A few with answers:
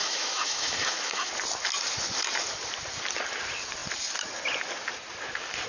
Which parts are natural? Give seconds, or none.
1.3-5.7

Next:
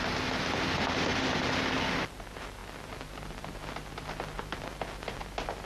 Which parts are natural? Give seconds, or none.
0.0-5.7

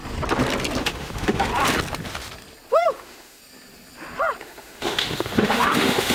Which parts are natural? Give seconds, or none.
0.0-0.8; 1.5-2.7; 3.4-4.4

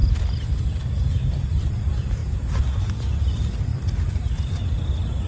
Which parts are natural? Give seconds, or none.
0.0-5.3

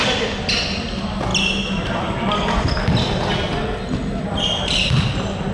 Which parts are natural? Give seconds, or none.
0.0-5.5

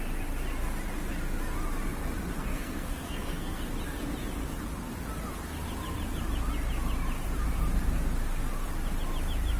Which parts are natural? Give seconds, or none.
0.0-2.4; 3.6-9.6

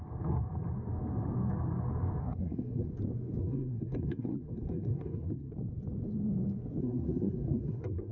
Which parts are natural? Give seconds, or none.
0.0-2.2; 2.9-3.4; 5.5-6.8